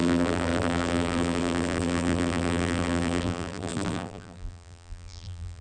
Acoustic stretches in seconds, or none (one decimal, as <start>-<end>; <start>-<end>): none